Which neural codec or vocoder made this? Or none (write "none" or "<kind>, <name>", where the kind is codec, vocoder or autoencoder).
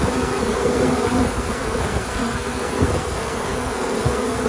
codec, SNAC